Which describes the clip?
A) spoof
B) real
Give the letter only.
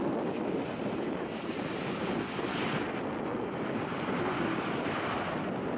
B